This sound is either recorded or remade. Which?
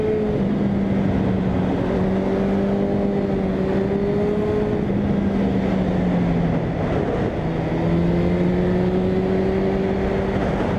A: recorded